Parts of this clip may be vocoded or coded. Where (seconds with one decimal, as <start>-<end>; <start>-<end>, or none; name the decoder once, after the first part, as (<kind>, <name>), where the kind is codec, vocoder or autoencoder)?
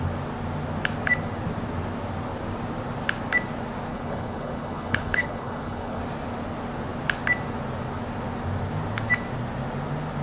3.9-6.0 (codec, HILCodec)